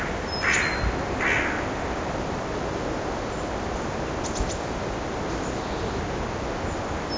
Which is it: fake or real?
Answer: real